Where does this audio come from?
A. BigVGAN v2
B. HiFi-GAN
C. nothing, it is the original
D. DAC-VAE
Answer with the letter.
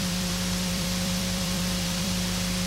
A